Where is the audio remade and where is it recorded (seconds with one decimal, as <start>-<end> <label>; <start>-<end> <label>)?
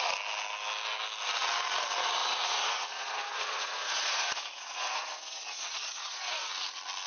0.0-2.2 recorded; 2.2-6.5 remade; 6.5-7.1 recorded